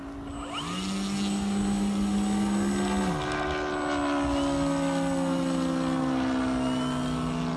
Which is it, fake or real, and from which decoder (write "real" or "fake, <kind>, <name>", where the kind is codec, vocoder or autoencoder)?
real